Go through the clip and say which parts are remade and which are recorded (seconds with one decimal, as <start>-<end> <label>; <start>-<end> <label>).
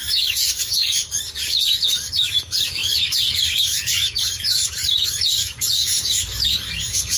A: 0.0-7.2 remade